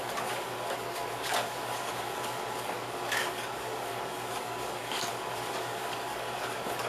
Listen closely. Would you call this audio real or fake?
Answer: fake